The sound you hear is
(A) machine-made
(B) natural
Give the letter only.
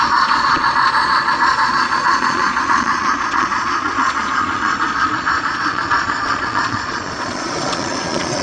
A